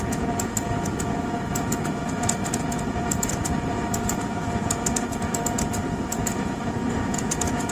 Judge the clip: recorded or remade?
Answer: remade